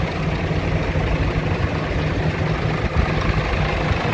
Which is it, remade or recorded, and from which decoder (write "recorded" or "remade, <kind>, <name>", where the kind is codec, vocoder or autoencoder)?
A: recorded